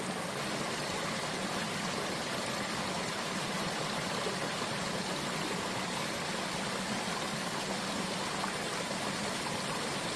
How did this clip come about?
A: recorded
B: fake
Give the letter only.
A